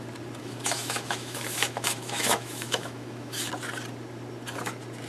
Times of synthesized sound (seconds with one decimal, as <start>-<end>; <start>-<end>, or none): 0.4-3.5